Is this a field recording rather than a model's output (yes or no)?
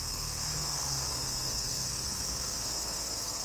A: no